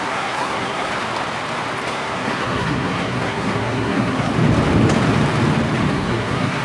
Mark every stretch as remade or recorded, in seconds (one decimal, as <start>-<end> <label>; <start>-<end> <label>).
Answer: 0.0-0.9 remade; 0.9-1.9 recorded; 1.9-4.3 remade; 4.3-5.9 recorded; 5.9-6.6 remade